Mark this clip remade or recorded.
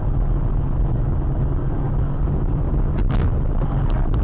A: recorded